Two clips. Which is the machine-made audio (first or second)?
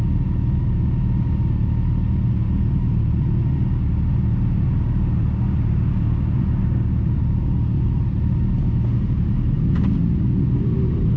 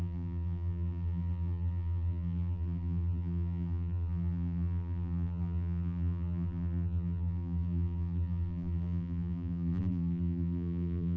second